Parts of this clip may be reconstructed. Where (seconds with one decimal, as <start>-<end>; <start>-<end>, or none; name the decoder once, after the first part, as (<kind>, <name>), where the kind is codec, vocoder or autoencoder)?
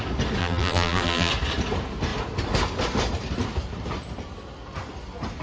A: 0.4-1.3 (vocoder, BigVGAN v2)